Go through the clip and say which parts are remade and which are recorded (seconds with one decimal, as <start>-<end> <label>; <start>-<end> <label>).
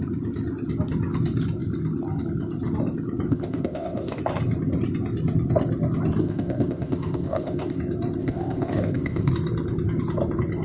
0.0-3.3 recorded; 3.3-4.2 remade; 4.2-6.2 recorded; 6.2-7.8 remade; 7.8-8.2 recorded; 8.2-9.3 remade; 9.3-10.6 recorded